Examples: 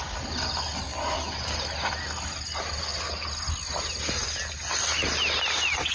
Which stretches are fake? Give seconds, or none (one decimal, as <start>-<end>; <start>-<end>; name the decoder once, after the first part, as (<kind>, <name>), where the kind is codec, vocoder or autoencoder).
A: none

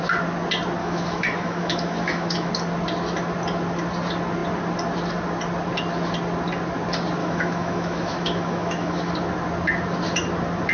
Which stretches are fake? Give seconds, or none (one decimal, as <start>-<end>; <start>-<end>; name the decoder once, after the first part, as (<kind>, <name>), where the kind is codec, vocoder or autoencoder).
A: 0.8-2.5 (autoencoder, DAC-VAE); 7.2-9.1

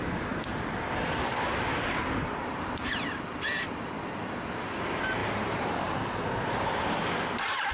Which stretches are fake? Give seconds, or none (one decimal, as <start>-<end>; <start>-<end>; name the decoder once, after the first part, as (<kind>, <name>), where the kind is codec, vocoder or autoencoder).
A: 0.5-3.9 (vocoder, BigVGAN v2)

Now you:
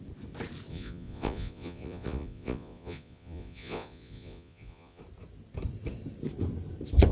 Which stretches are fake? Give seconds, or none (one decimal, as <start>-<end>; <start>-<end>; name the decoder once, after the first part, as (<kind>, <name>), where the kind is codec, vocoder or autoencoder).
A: 0.7-5.0 (vocoder, Vocos)